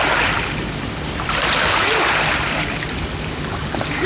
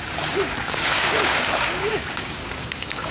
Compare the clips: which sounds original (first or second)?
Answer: first